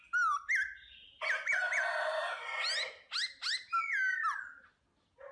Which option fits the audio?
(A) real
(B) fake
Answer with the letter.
A